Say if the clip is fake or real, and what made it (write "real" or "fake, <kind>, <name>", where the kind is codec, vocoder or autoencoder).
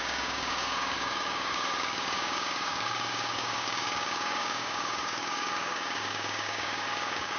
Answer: fake, codec, DAC